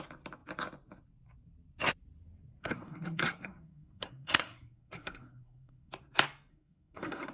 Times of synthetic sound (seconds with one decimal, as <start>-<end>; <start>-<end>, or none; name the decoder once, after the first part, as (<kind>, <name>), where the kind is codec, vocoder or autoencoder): 2.6-5.9 (codec, SNAC); 6.5-7.3